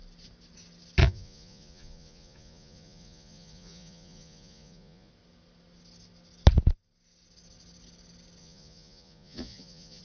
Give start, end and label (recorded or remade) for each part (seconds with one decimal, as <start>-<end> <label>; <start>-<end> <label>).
0.0-1.0 recorded; 1.0-5.1 remade; 5.1-8.4 recorded; 8.4-10.0 remade